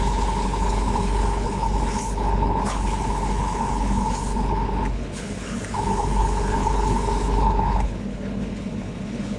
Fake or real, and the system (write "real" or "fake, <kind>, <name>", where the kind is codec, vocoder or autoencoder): fake, codec, HILCodec